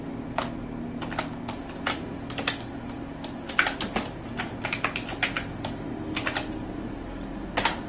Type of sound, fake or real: real